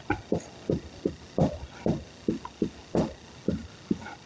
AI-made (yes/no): no